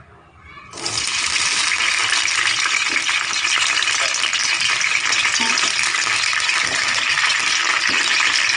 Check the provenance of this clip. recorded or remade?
recorded